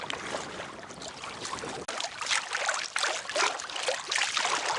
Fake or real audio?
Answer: real